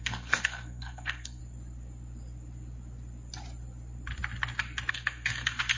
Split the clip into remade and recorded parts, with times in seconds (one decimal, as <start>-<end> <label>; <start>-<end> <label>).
0.0-1.4 remade; 1.4-4.9 recorded; 4.9-5.8 remade